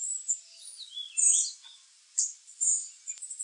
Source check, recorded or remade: recorded